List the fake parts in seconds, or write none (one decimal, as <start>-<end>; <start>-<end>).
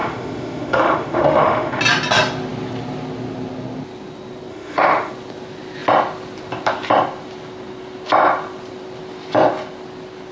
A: 0.0-1.8; 4.5-5.1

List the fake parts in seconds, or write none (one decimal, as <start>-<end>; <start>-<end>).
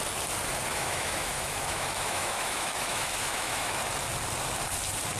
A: 0.7-3.8